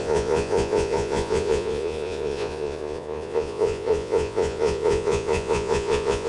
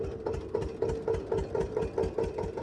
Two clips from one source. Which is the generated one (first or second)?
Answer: first